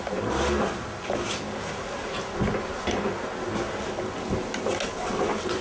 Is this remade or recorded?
recorded